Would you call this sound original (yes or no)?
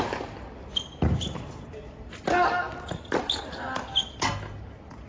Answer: yes